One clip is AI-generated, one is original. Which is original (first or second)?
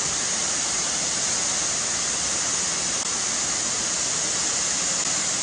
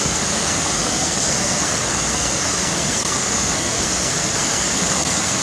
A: first